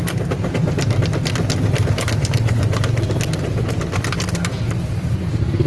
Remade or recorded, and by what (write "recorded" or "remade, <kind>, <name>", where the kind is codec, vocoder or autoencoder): recorded